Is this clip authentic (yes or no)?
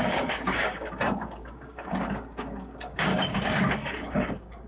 no